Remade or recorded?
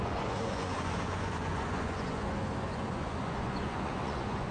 remade